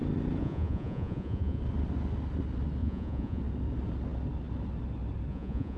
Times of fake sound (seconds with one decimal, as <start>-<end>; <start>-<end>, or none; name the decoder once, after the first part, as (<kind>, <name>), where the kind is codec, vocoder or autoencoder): 0.4-1.6 (vocoder, Vocos); 2.8-3.4; 5.3-5.8